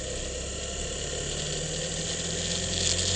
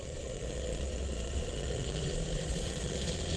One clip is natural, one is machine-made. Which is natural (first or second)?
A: first